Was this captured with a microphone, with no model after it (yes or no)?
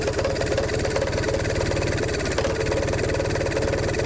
yes